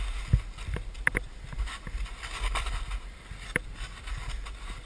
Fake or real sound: real